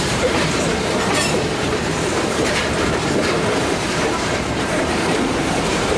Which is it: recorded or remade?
remade